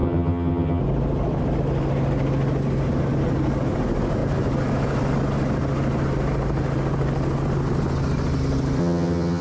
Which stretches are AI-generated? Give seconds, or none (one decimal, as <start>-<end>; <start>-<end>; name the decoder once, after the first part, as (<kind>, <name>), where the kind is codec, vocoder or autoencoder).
0.0-0.8 (vocoder, HiFi-GAN); 8.8-9.4

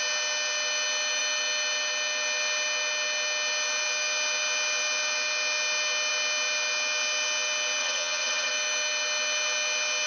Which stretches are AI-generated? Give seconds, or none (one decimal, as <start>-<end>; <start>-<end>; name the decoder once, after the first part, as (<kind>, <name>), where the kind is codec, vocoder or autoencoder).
7.8-8.5 (vocoder, HiFi-GAN)

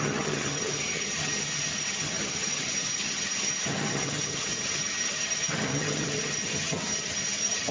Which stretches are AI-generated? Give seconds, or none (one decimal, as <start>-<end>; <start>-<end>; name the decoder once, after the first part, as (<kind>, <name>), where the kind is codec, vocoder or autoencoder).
0.0-7.7 (vocoder, HiFi-GAN)

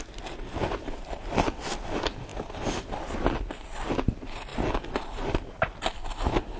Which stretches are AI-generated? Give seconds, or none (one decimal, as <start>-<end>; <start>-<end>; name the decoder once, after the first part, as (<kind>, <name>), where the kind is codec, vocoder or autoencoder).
none

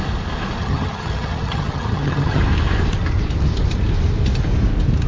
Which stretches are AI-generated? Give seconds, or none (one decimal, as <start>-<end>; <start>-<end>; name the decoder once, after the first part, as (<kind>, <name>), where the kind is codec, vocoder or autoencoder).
0.6-2.4 (vocoder, HiFi-GAN)

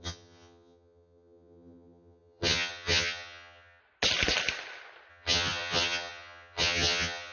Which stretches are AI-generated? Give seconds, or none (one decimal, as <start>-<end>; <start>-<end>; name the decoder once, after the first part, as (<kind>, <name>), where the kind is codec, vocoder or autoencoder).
0.0-3.8 (vocoder, HiFi-GAN); 5.1-7.3

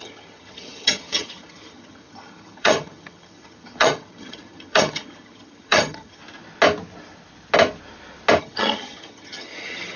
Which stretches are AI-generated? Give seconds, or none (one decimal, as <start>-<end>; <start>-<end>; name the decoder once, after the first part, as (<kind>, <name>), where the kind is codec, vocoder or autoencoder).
0.0-6.2 (vocoder, HiFi-GAN); 8.4-10.0